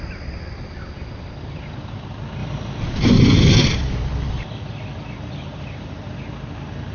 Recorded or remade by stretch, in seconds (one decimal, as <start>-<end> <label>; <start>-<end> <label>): 0.0-6.9 recorded